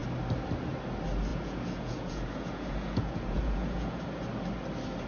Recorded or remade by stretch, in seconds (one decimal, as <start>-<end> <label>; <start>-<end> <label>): 0.0-1.3 recorded; 1.3-4.0 remade; 4.0-5.1 recorded